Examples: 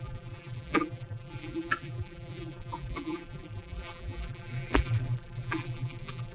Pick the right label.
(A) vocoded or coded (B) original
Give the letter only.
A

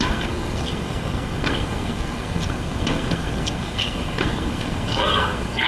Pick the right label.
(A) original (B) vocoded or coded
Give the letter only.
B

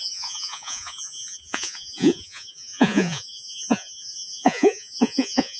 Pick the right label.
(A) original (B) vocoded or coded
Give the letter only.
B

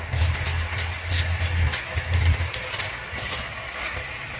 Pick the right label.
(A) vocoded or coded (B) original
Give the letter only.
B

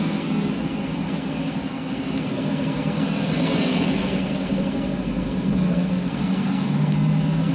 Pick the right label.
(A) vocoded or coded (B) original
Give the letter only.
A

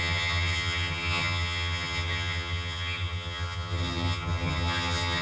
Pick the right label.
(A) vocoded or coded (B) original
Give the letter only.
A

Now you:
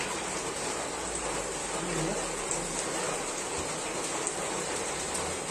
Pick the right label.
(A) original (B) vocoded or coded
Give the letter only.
A